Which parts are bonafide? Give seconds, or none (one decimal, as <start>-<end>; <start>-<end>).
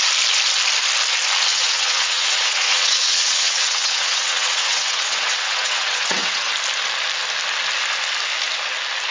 0.0-1.5; 6.5-9.1